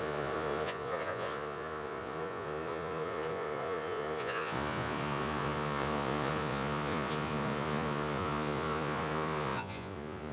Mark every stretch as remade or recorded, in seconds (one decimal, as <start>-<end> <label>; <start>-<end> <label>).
0.0-10.3 remade